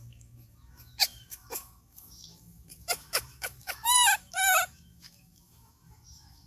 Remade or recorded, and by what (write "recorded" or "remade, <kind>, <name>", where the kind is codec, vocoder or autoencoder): remade, autoencoder, DAC-VAE